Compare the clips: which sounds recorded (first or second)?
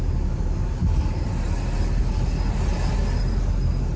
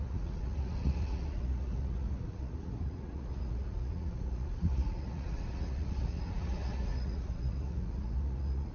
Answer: first